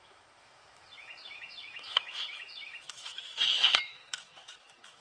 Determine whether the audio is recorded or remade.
remade